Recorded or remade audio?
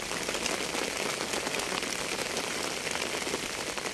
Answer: recorded